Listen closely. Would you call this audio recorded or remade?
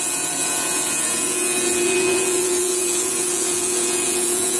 remade